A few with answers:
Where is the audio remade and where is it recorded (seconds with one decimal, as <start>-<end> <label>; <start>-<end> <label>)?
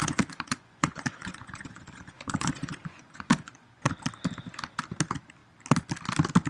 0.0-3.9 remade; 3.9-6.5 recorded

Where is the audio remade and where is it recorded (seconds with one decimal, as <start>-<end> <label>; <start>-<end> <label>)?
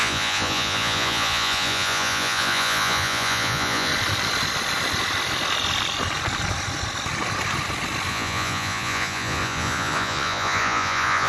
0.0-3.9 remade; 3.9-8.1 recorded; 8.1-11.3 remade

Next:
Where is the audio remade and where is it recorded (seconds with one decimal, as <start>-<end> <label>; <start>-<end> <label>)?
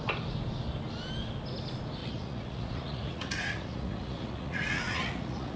0.0-2.0 recorded; 2.0-5.6 remade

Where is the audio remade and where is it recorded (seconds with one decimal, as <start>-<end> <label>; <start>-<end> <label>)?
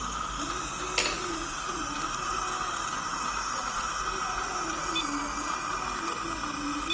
0.0-1.1 recorded; 1.1-1.8 remade; 1.8-3.1 recorded; 3.1-4.8 remade; 4.8-6.9 recorded